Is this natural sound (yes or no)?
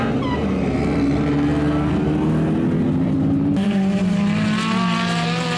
yes